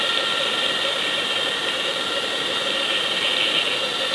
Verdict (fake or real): real